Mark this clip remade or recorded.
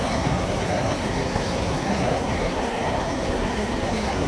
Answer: remade